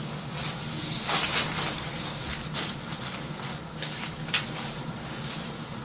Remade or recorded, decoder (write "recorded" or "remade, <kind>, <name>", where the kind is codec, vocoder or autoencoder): recorded